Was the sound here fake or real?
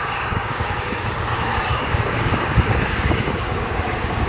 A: fake